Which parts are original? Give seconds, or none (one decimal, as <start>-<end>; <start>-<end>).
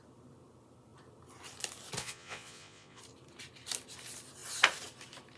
0.0-2.0; 3.0-5.4